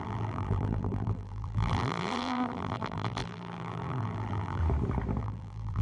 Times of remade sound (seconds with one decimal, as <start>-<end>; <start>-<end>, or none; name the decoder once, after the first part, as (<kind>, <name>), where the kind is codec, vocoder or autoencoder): 0.0-4.6 (vocoder, BigVGAN v2); 5.2-5.8